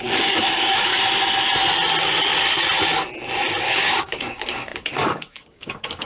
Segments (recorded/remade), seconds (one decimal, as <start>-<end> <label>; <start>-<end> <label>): 0.0-0.9 remade; 0.9-3.6 recorded; 3.6-6.1 remade